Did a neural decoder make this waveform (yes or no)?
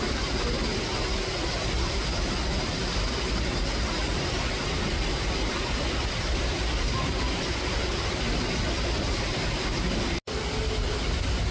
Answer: no